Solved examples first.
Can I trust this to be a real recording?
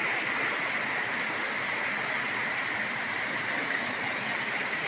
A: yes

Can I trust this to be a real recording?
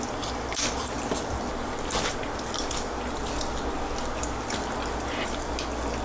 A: yes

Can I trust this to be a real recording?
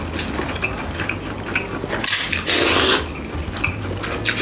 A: yes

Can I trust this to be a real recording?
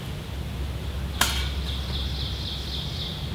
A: yes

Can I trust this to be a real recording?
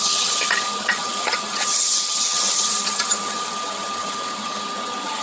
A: no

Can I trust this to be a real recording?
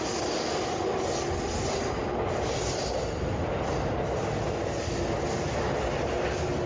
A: yes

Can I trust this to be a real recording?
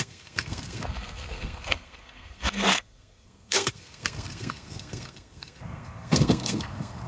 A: no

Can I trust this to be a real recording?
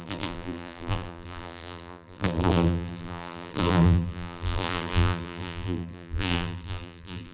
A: no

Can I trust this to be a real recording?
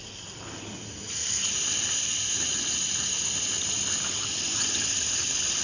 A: yes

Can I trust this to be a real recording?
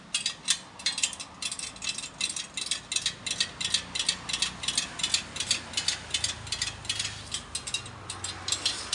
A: yes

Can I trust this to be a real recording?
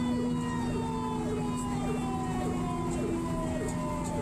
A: yes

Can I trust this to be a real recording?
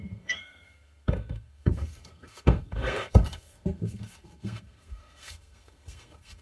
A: no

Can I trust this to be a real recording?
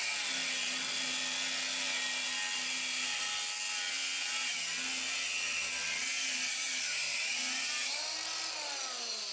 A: yes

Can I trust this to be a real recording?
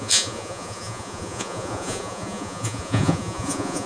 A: no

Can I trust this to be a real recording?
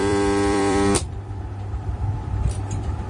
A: no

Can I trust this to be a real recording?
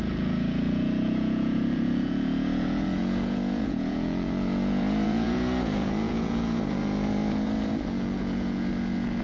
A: no